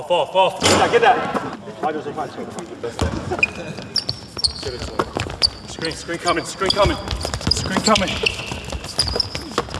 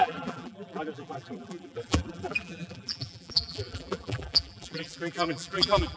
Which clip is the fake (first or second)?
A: second